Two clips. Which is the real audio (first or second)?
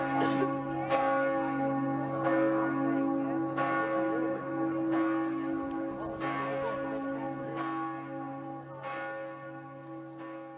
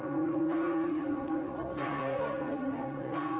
first